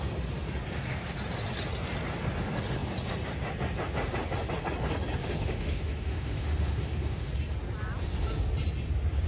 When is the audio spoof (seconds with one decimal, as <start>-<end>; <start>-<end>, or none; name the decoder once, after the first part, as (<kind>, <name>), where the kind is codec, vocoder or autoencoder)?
5.2-7.3 (autoencoder, DAC-VAE)

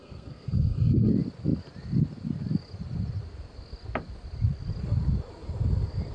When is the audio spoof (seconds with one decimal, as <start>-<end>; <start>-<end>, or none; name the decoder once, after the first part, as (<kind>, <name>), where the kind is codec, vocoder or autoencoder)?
0.0-1.1 (codec, SNAC)

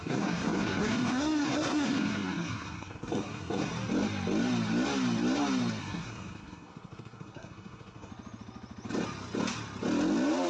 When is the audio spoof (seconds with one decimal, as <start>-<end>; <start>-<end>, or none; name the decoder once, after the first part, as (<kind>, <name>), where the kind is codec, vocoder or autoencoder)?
0.0-3.7 (codec, SNAC); 5.8-8.1

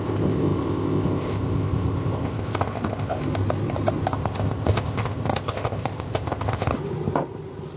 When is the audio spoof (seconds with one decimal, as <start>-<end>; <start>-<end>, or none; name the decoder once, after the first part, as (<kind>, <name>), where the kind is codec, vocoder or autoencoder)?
0.0-3.2 (codec, ZipCodec); 4.1-6.7

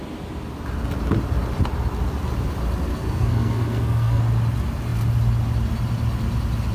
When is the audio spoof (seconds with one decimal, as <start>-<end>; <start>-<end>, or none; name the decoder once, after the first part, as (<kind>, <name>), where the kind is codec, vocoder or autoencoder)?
2.9-4.2 (codec, SNAC)

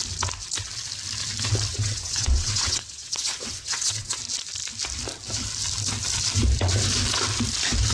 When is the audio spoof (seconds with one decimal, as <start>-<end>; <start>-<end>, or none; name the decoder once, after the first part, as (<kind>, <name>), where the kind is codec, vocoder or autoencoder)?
1.7-4.2 (vocoder, WaveNeXt)